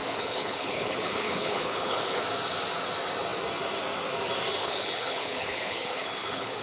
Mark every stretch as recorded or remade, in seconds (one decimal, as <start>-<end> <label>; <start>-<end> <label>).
0.0-2.2 remade; 2.2-4.6 recorded; 4.6-6.6 remade